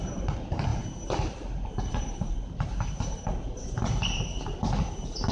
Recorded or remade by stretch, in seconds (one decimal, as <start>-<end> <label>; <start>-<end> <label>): 0.0-5.3 recorded